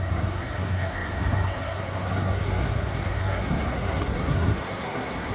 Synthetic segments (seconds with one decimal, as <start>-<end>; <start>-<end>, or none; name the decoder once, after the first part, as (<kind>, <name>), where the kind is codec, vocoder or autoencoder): 0.0-5.3 (codec, SNAC)